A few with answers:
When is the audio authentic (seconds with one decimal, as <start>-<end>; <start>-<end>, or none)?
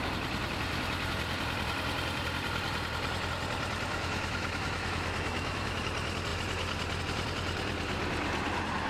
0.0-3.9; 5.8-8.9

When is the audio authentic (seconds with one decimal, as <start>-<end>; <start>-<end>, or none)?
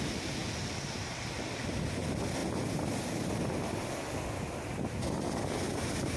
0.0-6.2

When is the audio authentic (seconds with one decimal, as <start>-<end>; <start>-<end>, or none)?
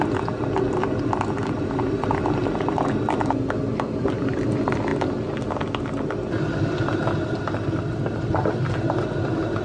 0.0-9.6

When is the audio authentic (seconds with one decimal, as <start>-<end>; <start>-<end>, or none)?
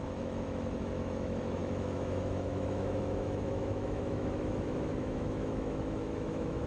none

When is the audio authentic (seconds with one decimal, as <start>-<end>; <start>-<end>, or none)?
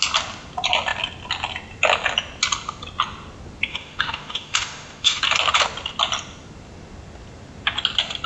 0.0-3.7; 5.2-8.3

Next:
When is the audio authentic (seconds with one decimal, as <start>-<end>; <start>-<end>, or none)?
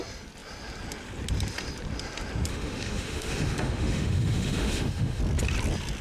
0.0-2.5; 5.2-6.0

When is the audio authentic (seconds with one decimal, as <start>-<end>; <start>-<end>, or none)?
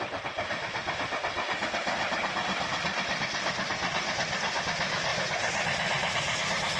0.0-6.8